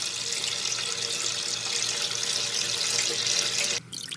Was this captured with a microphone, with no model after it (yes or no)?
yes